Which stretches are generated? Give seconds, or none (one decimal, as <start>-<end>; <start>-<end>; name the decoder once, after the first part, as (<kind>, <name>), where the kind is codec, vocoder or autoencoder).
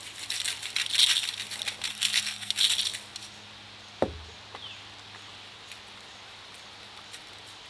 1.9-2.5 (codec, SNAC)